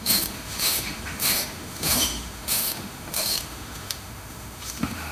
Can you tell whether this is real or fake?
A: fake